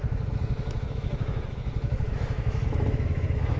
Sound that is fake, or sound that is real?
fake